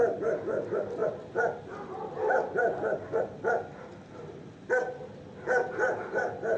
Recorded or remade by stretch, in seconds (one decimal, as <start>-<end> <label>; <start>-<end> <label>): 0.0-6.6 recorded